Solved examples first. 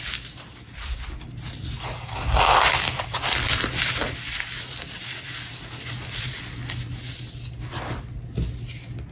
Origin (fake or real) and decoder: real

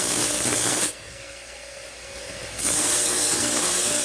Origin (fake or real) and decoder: fake, codec, SNAC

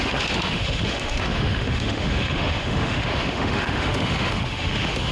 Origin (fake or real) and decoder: fake, autoencoder, DAC-VAE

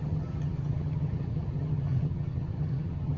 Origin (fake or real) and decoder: fake, vocoder, HiFi-GAN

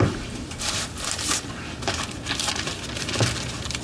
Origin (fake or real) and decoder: real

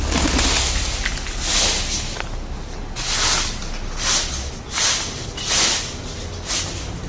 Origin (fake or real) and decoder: real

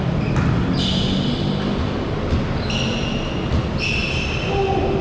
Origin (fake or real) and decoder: real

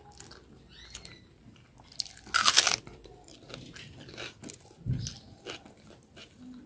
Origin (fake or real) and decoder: real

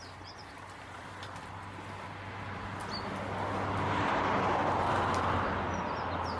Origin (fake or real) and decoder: real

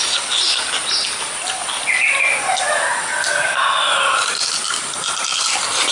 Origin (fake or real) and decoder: real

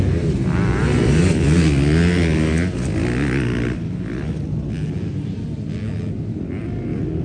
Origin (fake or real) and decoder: real